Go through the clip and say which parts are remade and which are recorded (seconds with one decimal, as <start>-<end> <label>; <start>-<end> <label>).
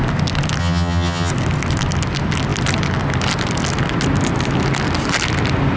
0.0-0.6 recorded; 0.6-1.3 remade; 1.3-5.8 recorded